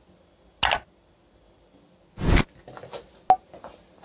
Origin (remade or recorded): recorded